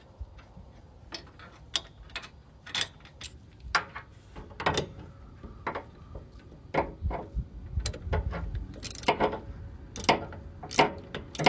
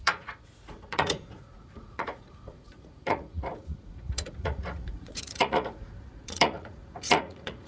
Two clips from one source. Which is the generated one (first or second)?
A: second